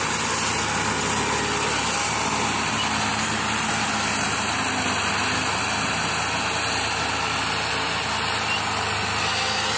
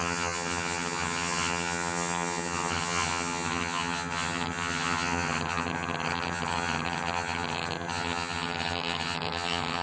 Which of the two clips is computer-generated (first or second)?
second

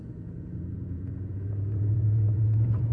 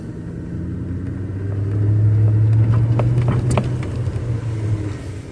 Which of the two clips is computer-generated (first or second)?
first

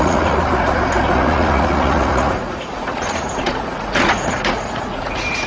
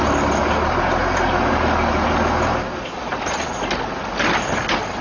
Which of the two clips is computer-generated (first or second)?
first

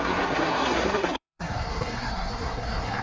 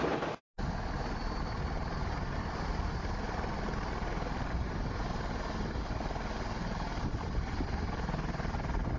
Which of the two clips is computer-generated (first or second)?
first